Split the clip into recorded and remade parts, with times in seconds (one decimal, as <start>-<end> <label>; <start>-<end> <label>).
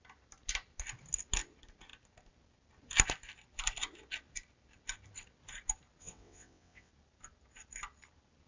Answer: 0.0-6.0 recorded; 6.0-6.9 remade; 6.9-8.5 recorded